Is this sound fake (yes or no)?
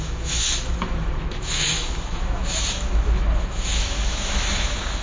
yes